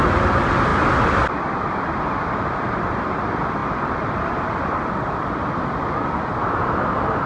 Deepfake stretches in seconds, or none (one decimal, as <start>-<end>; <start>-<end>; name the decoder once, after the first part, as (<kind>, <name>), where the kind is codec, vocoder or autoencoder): 0.7-1.6 (vocoder, BigVGAN v2); 3.6-5.5